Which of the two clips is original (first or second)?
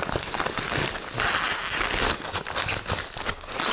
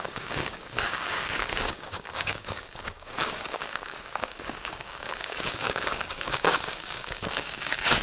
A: first